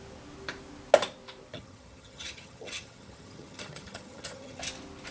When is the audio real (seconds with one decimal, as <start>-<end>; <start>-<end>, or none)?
0.0-1.5; 4.6-5.1